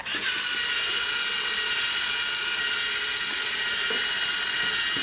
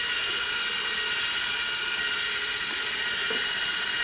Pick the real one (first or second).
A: first